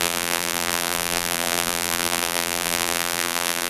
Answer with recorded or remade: remade